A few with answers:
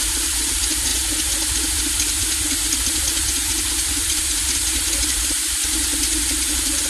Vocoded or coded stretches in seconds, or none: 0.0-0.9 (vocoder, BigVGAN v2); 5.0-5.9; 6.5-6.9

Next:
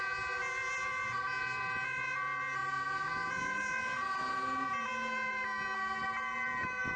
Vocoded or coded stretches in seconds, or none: none

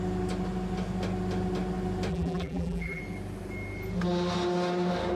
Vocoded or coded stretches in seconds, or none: 2.1-3.0 (vocoder, BigVGAN v2)

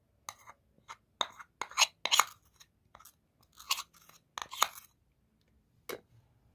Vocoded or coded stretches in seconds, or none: none

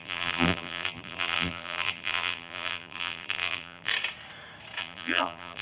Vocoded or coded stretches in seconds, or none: 0.0-3.9 (vocoder, BigVGAN v2); 4.8-5.6

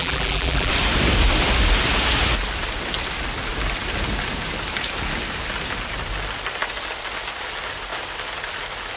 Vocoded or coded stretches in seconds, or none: 0.0-0.7 (vocoder, BigVGAN v2)